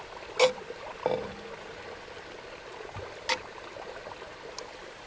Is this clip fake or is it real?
real